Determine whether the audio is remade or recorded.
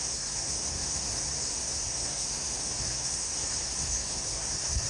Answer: remade